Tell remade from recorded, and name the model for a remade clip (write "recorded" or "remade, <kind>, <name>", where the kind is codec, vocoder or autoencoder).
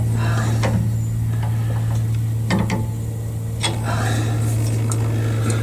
recorded